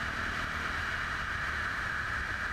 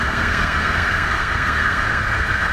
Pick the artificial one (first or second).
second